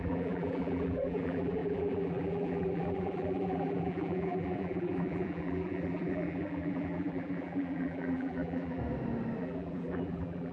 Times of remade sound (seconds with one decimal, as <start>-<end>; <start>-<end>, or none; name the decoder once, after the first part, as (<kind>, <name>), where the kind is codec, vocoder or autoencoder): 0.0-8.8 (vocoder, BigVGAN v2); 9.4-10.5